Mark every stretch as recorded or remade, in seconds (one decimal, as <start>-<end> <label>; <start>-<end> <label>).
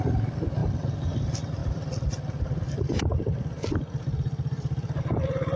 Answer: 0.0-0.6 recorded; 0.6-1.2 remade; 1.2-1.6 recorded; 1.6-5.0 remade; 5.0-5.6 recorded